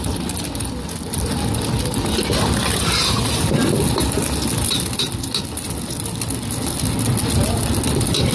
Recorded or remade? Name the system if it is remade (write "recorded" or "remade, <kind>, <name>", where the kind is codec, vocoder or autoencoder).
recorded